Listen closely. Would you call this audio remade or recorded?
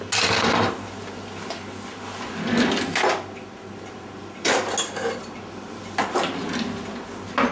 recorded